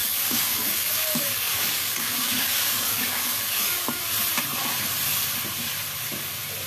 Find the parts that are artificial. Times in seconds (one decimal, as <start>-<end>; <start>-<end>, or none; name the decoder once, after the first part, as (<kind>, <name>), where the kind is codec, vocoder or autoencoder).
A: 0.0-4.0 (codec, DAC)